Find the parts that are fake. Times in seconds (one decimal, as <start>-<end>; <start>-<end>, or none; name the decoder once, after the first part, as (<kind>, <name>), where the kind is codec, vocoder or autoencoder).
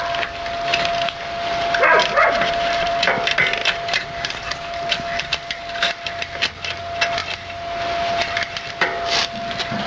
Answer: 0.7-2.9 (vocoder, BigVGAN v2); 3.6-6.8; 7.2-8.7